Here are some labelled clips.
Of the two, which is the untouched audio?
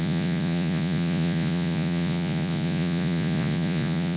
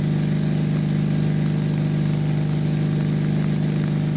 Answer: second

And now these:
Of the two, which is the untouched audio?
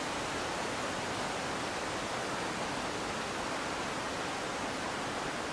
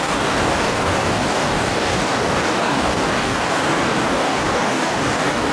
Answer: first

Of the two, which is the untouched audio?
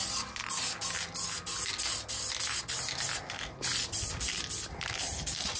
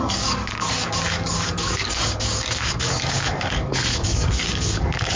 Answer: first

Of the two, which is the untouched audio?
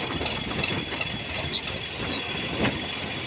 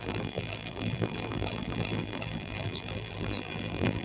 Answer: first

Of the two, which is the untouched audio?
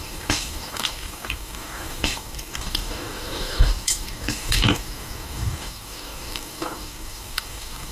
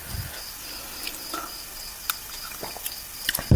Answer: second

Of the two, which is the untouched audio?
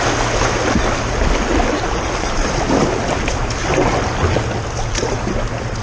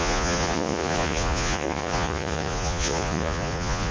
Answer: first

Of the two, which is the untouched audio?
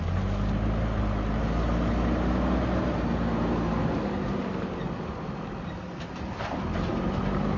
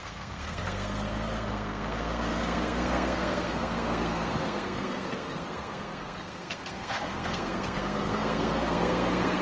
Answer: first